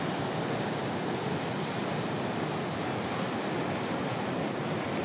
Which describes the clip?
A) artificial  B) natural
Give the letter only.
B